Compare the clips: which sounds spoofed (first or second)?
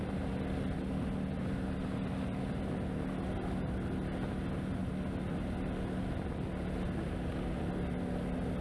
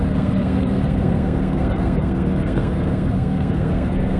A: second